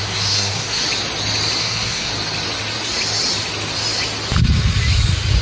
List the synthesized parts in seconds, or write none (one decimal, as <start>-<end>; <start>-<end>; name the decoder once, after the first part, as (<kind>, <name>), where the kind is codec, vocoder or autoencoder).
0.0-0.8 (codec, SNAC); 1.6-2.1